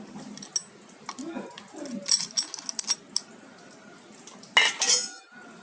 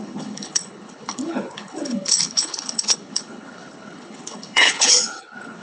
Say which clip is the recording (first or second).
first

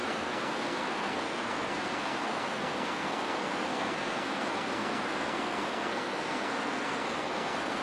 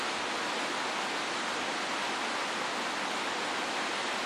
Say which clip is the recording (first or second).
second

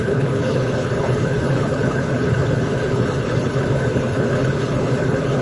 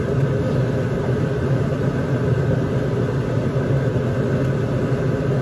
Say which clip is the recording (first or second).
second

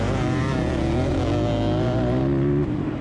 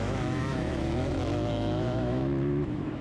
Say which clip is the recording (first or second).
first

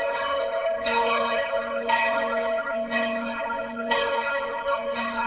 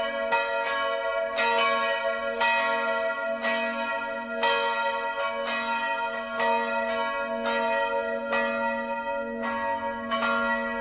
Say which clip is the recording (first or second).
second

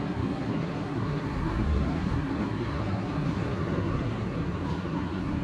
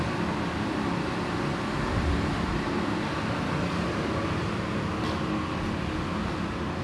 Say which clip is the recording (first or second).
second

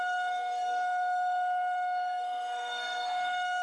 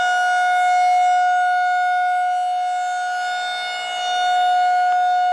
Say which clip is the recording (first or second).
second